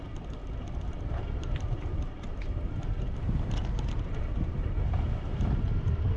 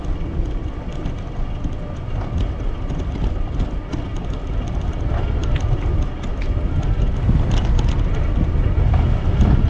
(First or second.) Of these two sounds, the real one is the second